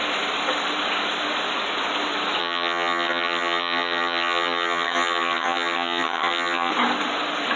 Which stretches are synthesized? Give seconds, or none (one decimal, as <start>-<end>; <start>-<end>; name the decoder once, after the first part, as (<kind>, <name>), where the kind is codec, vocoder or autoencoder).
2.4-6.7 (vocoder, HiFi-GAN)